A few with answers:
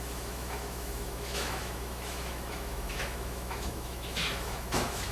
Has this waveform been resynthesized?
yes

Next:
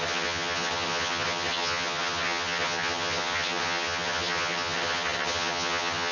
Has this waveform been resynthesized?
yes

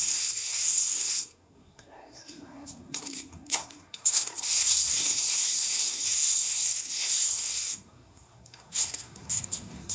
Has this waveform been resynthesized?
yes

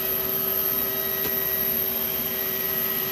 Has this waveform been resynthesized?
no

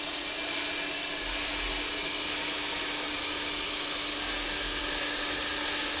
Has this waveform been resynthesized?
no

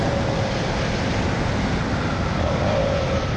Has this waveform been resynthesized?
no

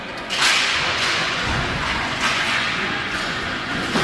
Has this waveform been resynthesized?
yes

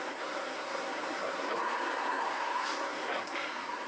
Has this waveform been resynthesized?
yes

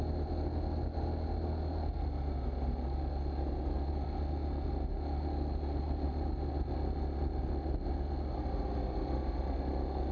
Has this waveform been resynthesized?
no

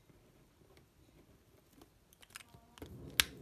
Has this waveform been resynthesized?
no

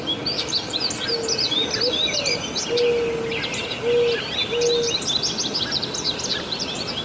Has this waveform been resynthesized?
no